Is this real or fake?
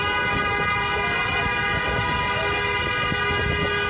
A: real